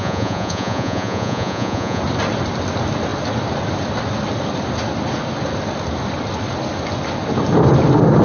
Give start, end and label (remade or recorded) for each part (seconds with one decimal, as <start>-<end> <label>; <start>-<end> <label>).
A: 0.0-2.0 remade; 2.0-8.2 recorded